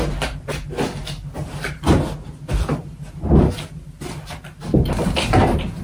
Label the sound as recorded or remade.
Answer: recorded